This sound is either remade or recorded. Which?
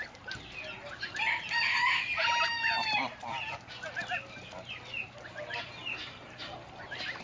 recorded